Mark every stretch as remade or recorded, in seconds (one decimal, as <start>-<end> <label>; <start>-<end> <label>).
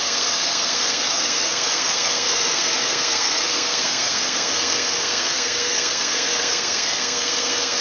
0.0-7.8 remade